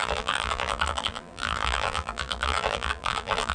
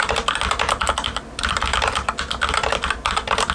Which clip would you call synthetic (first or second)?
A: first